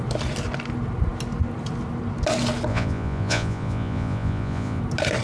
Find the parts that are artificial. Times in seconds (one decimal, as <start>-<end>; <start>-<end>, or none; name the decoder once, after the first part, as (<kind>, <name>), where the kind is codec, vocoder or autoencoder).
2.7-4.8 (vocoder, Vocos)